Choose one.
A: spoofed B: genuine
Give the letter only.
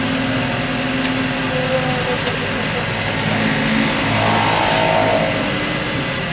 B